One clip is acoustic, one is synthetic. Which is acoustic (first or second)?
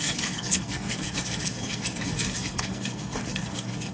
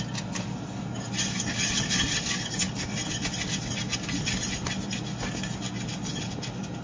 second